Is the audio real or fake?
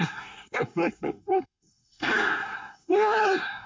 fake